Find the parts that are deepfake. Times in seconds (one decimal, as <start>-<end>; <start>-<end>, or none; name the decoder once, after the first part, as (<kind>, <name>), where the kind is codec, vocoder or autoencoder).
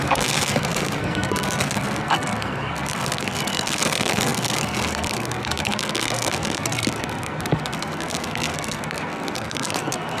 0.0-10.2 (codec, SNAC)